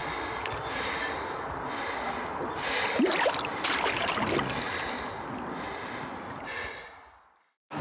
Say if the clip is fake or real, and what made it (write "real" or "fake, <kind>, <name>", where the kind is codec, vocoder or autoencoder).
real